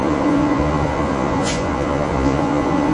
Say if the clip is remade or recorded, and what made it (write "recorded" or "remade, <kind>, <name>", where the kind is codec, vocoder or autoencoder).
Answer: remade, vocoder, Vocos